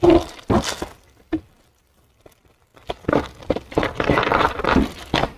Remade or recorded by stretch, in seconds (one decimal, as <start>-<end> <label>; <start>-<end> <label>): 0.0-2.7 remade; 2.7-3.4 recorded; 3.4-5.4 remade